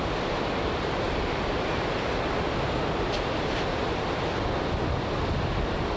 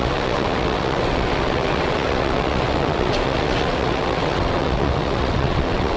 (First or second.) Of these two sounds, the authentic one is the first